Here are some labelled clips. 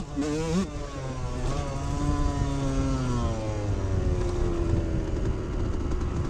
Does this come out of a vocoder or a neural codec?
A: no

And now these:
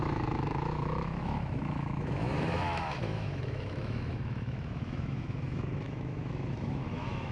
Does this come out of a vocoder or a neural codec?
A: yes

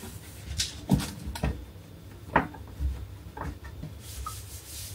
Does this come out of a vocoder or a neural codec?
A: no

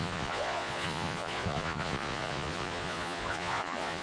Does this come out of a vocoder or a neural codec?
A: yes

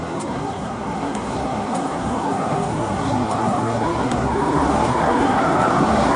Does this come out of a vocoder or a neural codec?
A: yes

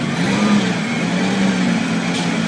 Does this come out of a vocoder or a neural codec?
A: no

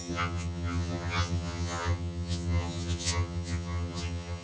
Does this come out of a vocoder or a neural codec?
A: yes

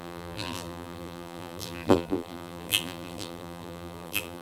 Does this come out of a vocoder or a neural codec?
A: yes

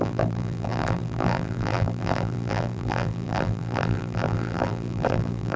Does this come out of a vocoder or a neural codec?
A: yes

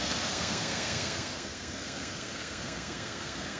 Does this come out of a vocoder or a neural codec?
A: yes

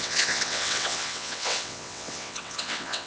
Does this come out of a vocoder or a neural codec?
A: yes